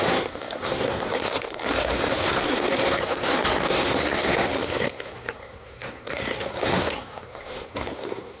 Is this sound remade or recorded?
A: remade